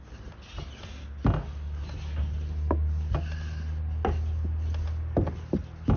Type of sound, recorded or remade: recorded